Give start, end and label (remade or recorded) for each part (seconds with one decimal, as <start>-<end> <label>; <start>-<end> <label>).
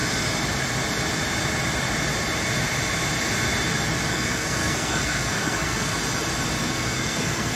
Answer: 0.0-4.1 recorded; 4.1-5.9 remade; 5.9-6.6 recorded; 6.6-7.6 remade